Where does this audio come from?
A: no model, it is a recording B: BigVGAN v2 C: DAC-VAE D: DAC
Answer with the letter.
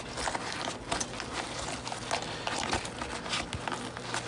A